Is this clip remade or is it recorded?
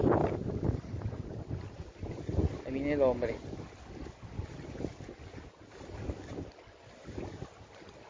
recorded